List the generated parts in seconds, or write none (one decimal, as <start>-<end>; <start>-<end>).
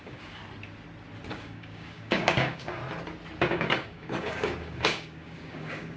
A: 0.0-0.4; 1.3-2.8; 3.4-6.0